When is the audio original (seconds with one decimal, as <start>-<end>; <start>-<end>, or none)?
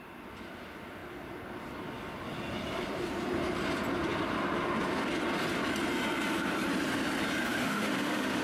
0.0-7.5